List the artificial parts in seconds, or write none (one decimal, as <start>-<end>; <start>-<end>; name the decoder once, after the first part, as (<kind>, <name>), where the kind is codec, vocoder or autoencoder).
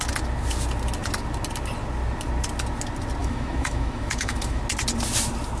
3.2-4.6 (autoencoder, DAC-VAE)